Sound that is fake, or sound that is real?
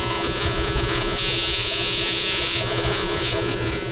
fake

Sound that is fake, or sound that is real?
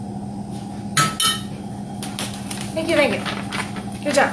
real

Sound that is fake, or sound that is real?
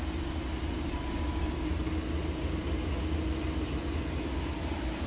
real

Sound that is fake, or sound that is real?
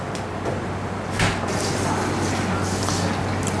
real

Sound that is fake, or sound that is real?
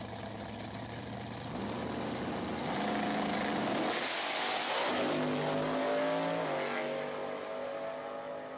real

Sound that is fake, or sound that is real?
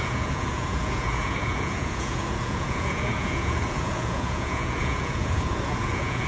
fake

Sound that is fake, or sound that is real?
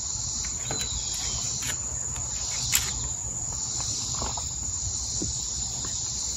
real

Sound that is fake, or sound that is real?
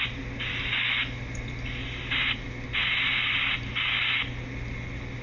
real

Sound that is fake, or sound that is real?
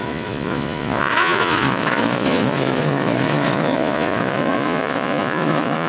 fake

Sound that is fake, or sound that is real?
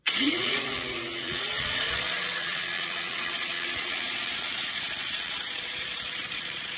fake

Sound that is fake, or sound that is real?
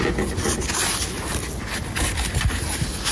real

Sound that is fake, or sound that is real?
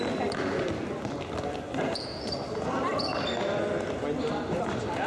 real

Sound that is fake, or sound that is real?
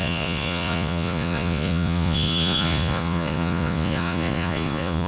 fake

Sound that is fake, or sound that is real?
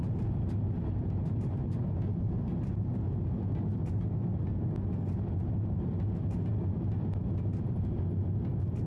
real